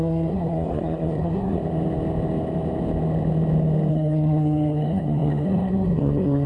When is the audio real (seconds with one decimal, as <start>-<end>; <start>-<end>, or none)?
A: 1.6-3.9